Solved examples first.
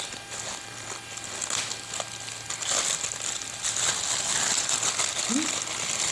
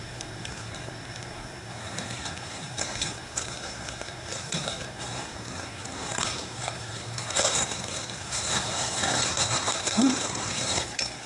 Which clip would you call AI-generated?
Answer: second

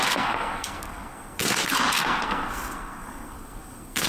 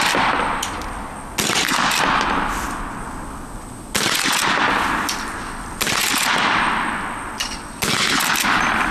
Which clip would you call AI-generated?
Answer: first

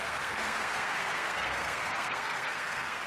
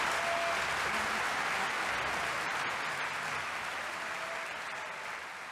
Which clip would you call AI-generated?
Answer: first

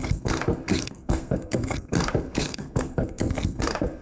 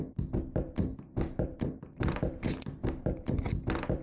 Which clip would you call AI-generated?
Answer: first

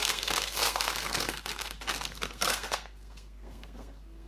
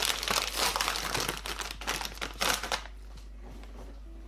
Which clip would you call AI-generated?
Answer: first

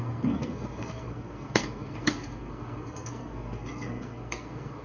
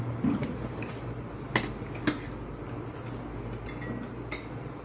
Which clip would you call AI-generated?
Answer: first